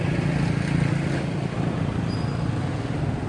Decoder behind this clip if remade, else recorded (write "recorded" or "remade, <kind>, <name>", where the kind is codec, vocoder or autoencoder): recorded